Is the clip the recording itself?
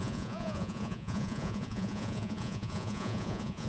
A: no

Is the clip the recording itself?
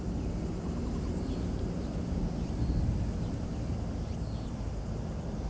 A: yes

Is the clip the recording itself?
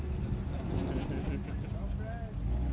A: yes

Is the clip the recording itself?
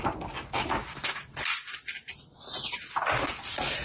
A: yes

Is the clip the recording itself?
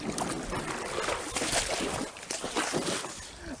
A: yes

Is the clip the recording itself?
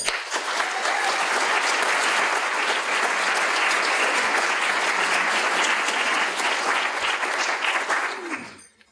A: no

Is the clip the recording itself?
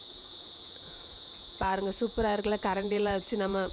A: no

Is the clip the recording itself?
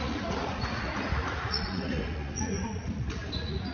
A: no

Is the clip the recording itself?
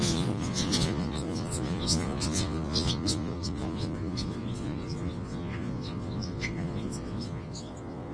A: no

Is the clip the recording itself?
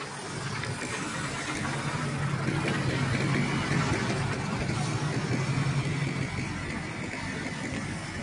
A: yes